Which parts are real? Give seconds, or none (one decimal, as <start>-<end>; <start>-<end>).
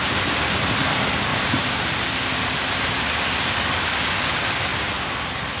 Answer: 0.0-1.3; 3.0-5.6